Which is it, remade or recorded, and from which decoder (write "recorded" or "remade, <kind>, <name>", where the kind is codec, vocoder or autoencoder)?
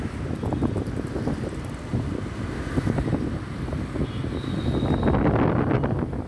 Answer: recorded